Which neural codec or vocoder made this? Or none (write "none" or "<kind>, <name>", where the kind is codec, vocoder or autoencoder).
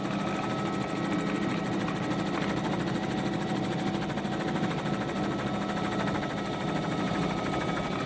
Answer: none